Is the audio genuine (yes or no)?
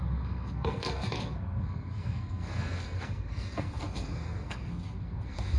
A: no